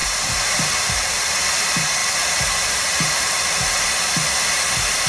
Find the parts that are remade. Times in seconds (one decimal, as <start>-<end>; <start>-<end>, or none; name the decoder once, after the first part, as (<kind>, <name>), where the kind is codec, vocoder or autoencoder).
0.0-1.4 (vocoder, BigVGAN v2); 2.0-4.0